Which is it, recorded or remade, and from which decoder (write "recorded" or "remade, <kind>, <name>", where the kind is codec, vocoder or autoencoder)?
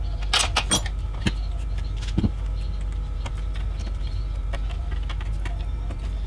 recorded